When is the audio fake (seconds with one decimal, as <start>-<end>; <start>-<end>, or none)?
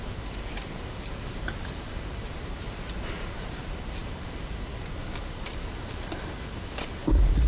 0.0-7.5